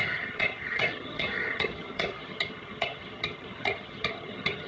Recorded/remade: remade